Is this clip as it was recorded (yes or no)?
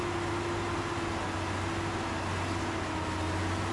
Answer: yes